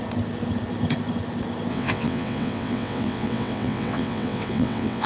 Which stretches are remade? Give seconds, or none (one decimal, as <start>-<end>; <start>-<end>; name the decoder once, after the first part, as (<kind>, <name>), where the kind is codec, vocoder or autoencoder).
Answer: 1.7-5.1 (vocoder, WaveNeXt)